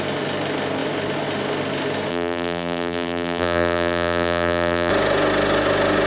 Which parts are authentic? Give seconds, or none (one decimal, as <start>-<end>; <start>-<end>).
0.0-2.1; 4.9-6.1

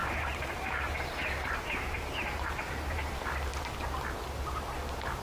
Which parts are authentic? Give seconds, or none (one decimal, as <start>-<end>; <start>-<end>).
3.1-5.2

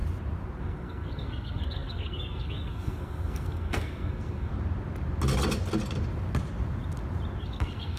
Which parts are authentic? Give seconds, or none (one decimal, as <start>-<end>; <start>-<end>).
0.0-0.6; 4.5-7.4

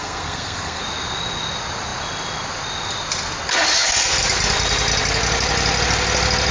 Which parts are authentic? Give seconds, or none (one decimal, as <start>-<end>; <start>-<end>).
0.8-6.5

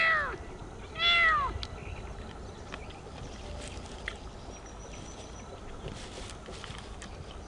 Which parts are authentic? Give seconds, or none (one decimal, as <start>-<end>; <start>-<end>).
0.0-7.5